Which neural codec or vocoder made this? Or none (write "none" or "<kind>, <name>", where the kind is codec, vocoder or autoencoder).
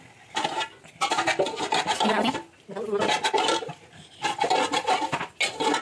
none